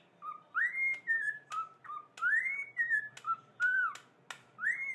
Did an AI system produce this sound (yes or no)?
no